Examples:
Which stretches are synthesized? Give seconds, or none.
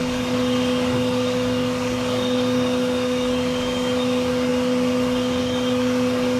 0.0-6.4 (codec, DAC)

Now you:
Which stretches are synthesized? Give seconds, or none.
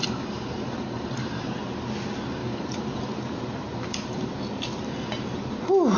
0.0-1.5 (vocoder, BigVGAN v2); 2.4-3.1; 3.7-4.3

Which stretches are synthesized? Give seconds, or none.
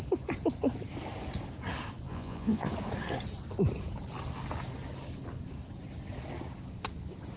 2.1-2.7 (vocoder, Vocos)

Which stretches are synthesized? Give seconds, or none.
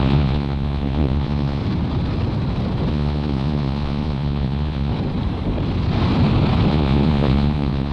0.0-1.6 (vocoder, Vocos); 2.9-4.9; 6.7-7.9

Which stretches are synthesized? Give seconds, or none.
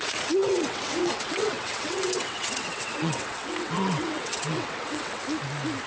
0.0-5.2 (vocoder, WaveNeXt)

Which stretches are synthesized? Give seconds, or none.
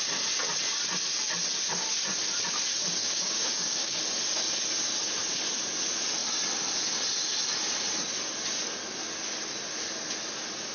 3.0-4.0 (codec, DAC)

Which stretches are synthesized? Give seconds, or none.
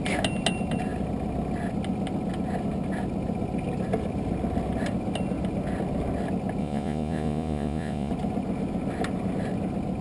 6.6-8.1 (vocoder, Vocos)